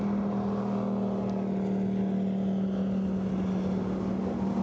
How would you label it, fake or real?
real